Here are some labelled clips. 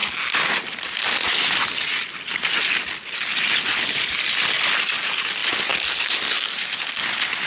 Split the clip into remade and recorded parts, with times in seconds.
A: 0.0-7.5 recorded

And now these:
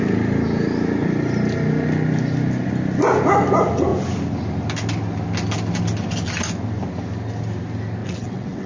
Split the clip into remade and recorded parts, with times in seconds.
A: 0.0-8.0 recorded; 8.0-8.7 remade